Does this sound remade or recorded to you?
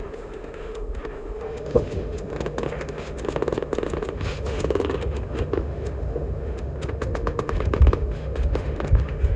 remade